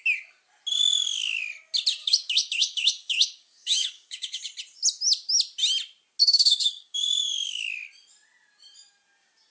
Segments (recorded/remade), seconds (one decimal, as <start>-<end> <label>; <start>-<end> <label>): 0.0-0.8 recorded; 0.8-1.4 remade; 1.4-2.0 recorded; 2.0-4.4 remade; 4.4-6.2 recorded; 6.2-7.7 remade; 7.7-9.5 recorded